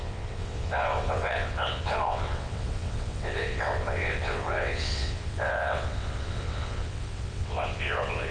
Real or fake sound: fake